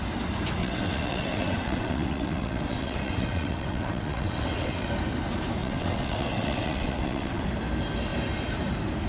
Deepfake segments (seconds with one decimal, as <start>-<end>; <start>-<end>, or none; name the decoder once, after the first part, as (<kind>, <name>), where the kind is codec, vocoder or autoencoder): 0.6-4.9 (vocoder, WaveNeXt); 5.6-7.4

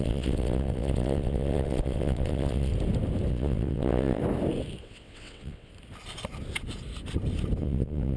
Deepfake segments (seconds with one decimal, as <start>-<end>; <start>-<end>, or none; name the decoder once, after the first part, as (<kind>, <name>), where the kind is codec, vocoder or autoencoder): 0.0-2.7 (vocoder, WaveNeXt); 3.3-4.2; 4.8-5.7; 7.6-8.2